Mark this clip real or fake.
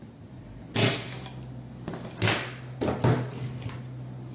real